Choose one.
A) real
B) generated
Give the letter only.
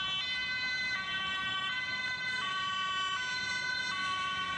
A